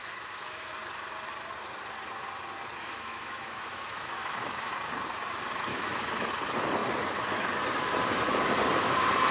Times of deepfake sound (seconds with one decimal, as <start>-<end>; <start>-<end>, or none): 0.0-0.7; 2.8-4.7; 5.7-6.3